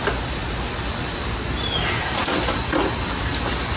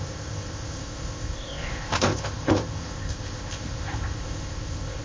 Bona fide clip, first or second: first